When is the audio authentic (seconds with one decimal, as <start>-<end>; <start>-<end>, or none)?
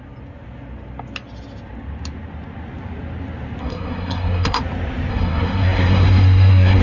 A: 0.0-3.6; 4.6-5.1